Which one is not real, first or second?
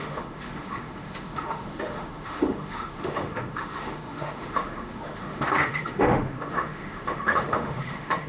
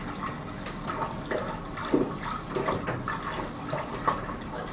first